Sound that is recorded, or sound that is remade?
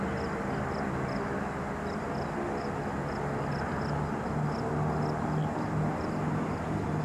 recorded